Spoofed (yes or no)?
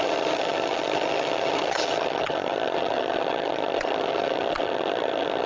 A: yes